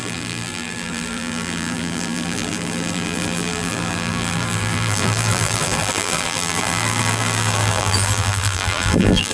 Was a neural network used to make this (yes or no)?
yes